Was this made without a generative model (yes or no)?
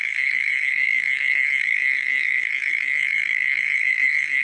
no